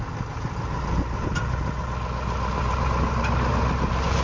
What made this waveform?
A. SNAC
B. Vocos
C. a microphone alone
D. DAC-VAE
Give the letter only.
C